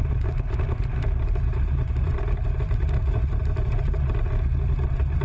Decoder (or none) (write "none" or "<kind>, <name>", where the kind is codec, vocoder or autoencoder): vocoder, BigVGAN v2